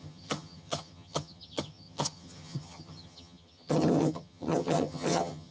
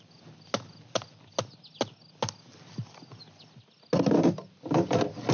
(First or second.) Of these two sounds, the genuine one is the second